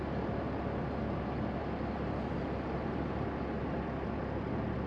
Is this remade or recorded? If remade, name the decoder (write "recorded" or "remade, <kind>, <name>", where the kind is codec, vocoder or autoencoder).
recorded